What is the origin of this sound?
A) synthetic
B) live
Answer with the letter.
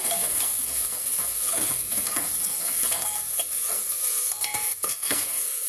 A